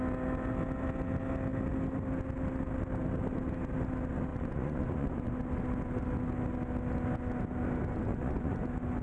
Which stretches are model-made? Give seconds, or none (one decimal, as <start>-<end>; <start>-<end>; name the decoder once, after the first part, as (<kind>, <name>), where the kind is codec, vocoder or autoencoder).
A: 4.3-5.3 (vocoder, Vocos); 8.1-8.6